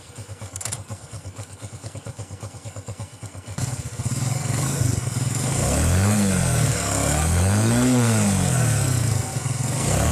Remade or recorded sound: remade